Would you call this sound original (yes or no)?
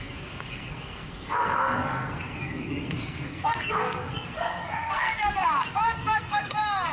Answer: no